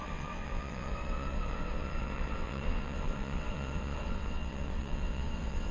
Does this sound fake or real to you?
fake